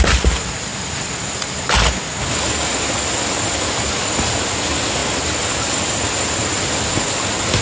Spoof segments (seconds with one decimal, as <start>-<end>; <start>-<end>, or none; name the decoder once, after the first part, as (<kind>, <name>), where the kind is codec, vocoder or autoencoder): none